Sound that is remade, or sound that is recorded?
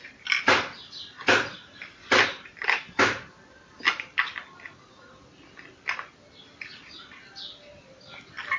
recorded